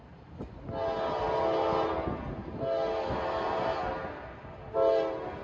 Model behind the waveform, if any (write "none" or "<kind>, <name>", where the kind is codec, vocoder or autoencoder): none